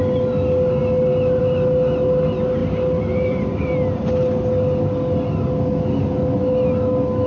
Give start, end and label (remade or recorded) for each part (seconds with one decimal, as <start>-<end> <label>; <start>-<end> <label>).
0.0-7.3 recorded